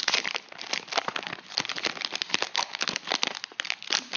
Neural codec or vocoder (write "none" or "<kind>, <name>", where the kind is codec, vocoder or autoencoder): none